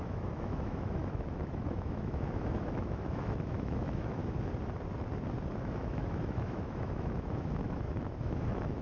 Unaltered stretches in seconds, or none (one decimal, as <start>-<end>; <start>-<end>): 4.2-5.6